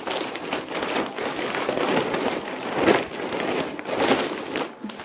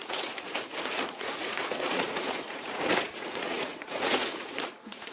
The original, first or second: first